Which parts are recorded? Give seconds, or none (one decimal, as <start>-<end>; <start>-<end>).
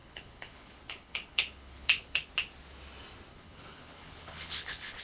2.3-3.3